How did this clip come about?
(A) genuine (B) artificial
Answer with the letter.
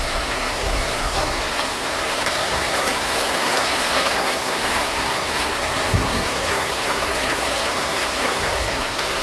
B